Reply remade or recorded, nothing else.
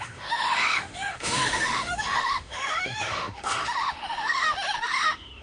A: remade